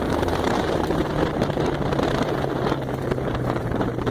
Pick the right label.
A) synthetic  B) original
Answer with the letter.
A